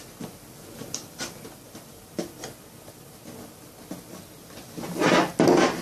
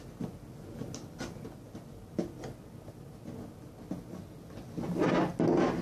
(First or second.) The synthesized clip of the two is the first